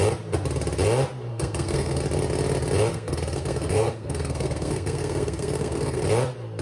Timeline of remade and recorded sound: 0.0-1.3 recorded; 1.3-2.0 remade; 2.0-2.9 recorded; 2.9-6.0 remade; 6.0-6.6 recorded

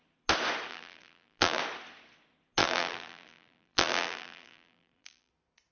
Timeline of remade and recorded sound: 0.0-0.7 recorded; 0.7-1.6 remade; 1.6-2.6 recorded; 2.6-5.3 remade; 5.3-5.7 recorded

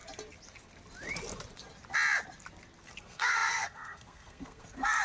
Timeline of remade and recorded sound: 0.0-3.0 recorded; 3.0-5.0 remade

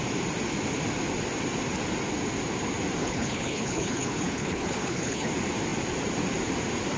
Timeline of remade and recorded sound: 0.0-3.0 recorded; 3.0-5.3 remade; 5.3-7.0 recorded

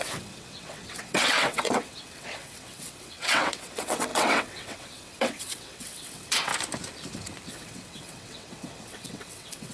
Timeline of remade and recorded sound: 0.0-6.5 remade; 6.5-7.5 recorded; 7.5-9.7 remade

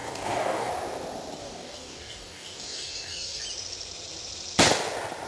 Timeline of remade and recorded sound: 0.0-0.7 remade; 0.7-1.4 recorded; 1.4-3.4 remade; 3.4-5.3 recorded

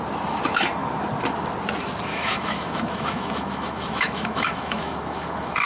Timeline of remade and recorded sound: 0.0-2.1 recorded; 2.1-5.7 remade